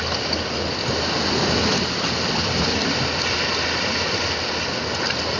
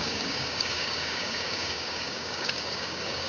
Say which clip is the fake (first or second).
second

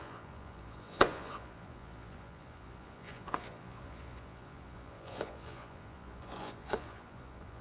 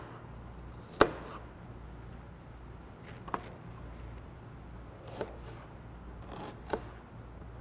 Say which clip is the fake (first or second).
first